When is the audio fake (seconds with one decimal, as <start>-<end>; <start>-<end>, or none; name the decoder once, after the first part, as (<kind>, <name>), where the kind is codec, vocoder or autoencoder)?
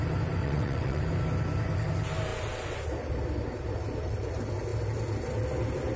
0.4-1.0 (vocoder, WaveNeXt)